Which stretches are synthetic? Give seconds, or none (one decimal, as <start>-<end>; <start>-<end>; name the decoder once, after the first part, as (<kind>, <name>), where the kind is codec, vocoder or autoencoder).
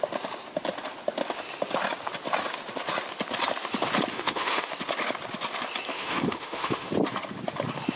4.1-4.7 (autoencoder, DAC-VAE); 5.9-6.9